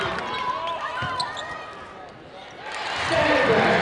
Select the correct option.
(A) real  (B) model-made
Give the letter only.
A